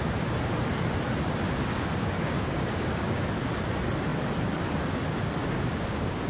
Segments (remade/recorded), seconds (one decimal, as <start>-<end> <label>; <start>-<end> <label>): 0.0-1.7 recorded; 1.7-3.3 remade; 3.3-5.4 recorded; 5.4-6.3 remade